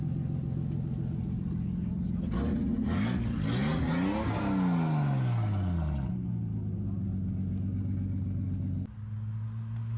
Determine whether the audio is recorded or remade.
recorded